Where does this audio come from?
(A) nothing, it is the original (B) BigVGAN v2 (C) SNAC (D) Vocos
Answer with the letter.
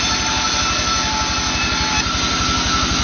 A